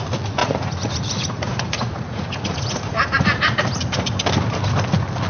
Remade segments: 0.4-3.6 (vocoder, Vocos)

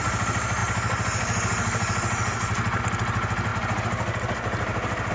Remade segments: none